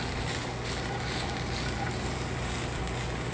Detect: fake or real real